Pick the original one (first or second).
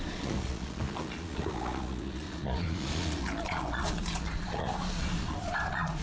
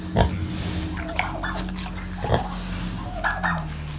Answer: second